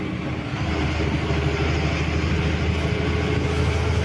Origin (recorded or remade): recorded